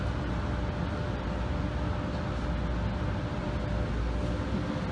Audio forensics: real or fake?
real